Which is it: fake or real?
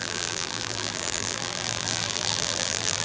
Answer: fake